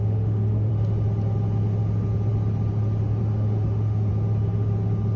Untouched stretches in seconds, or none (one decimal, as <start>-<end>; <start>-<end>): 0.7-3.2; 4.1-5.2